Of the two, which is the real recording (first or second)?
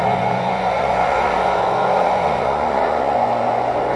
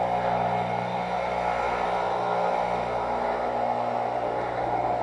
second